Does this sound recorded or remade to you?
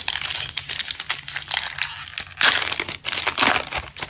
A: recorded